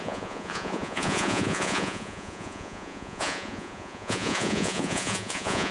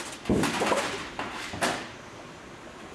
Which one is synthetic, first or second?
first